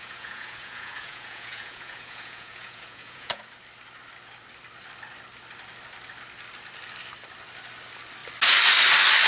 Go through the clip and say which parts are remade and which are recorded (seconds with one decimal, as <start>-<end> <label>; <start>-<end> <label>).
0.0-3.4 remade; 3.4-9.3 recorded